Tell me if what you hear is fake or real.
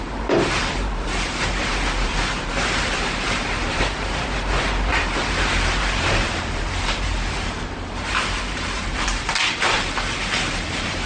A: fake